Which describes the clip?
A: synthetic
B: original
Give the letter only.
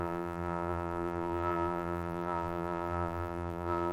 A